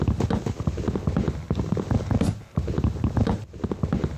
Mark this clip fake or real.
real